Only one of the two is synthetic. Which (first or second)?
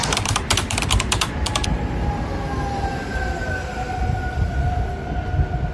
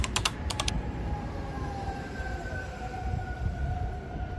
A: second